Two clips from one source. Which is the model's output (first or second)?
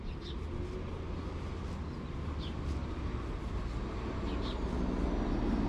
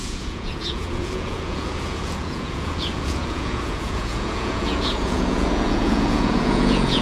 second